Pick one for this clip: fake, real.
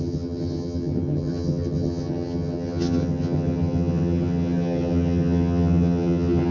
fake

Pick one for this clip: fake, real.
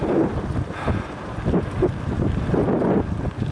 real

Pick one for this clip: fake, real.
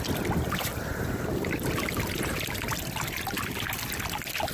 fake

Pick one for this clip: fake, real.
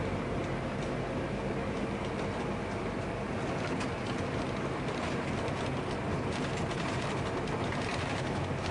real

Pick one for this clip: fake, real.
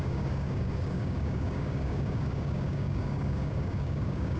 fake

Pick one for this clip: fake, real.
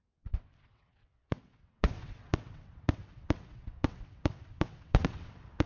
fake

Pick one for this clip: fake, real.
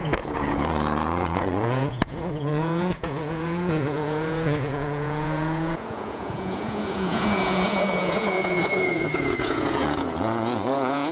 fake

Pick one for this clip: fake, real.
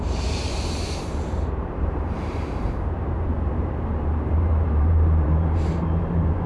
fake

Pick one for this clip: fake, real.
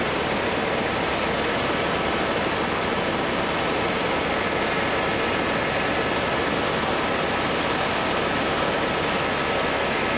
real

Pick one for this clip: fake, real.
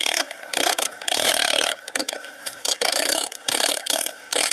fake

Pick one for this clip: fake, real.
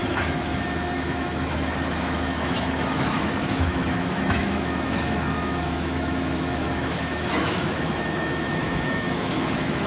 fake